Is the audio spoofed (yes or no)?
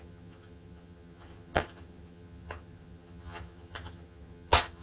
yes